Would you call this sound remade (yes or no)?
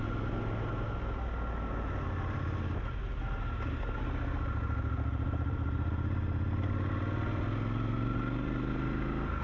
no